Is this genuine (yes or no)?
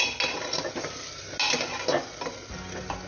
yes